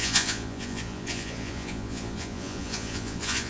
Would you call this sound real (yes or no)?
no